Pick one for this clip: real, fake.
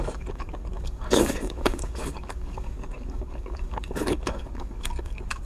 fake